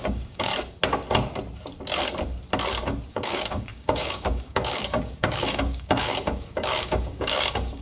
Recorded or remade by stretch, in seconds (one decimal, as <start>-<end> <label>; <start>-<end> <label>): 0.0-0.5 remade; 0.5-3.1 recorded; 3.1-7.8 remade

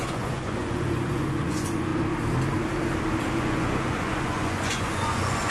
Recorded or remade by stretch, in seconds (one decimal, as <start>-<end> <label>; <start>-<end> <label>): 0.0-1.9 remade; 1.9-3.3 recorded; 3.3-5.5 remade

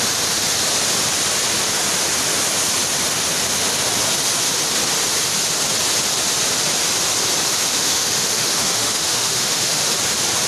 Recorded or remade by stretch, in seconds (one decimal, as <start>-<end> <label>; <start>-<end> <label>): 0.0-7.7 recorded; 7.7-9.9 remade; 9.9-10.5 recorded

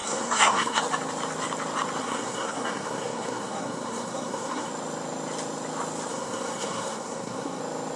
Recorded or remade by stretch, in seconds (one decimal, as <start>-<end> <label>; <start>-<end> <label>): 0.0-0.8 remade; 0.8-2.0 recorded; 2.0-4.7 remade; 4.7-6.1 recorded; 6.1-7.6 remade; 7.6-8.0 recorded

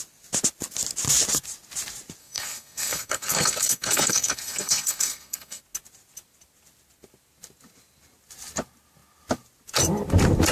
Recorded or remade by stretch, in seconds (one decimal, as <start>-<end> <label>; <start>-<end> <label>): 0.0-2.2 recorded; 2.2-5.6 remade; 5.6-10.5 recorded

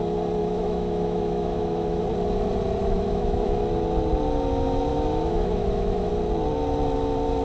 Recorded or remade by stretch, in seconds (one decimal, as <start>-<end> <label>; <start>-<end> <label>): 0.0-0.4 recorded; 0.4-2.0 remade; 2.0-2.8 recorded; 2.8-3.6 remade; 3.6-4.9 recorded; 4.9-6.1 remade; 6.1-7.4 recorded